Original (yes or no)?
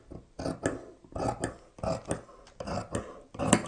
yes